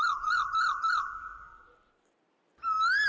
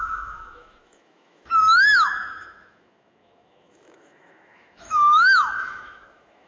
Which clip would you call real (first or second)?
first